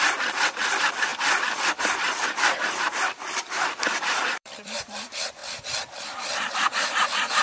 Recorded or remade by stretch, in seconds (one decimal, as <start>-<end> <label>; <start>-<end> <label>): 0.0-1.1 remade; 1.1-1.8 recorded; 1.8-5.4 remade; 5.4-7.4 recorded